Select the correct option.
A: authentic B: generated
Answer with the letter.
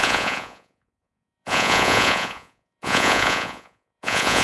B